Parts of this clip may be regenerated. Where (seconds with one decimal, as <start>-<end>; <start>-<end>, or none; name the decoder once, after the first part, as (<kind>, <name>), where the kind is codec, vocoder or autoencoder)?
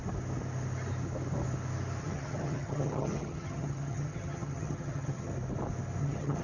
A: 2.0-5.3 (vocoder, HiFi-GAN); 6.0-6.4